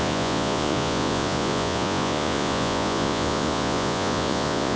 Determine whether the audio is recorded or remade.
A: remade